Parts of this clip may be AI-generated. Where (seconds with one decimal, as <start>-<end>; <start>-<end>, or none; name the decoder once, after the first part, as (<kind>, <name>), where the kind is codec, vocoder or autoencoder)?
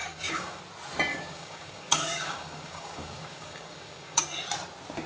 0.0-0.6 (codec, DAC); 1.1-4.2